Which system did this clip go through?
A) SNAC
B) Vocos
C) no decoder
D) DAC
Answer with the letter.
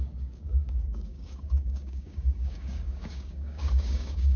D